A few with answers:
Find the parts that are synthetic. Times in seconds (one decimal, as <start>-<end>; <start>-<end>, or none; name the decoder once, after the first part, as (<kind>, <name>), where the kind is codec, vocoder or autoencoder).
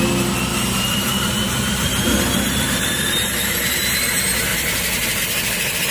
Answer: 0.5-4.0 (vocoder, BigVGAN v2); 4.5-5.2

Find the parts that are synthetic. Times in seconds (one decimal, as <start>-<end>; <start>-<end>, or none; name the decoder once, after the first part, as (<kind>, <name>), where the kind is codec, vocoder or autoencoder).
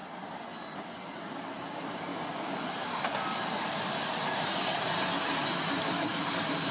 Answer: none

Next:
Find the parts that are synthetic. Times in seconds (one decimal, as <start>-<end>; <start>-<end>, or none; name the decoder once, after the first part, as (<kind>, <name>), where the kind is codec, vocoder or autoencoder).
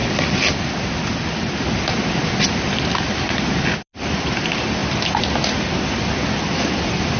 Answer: none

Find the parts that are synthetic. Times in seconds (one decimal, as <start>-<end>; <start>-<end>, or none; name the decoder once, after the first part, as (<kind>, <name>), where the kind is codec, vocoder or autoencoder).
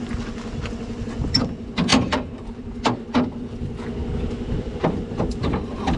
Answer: 1.9-2.8 (vocoder, BigVGAN v2)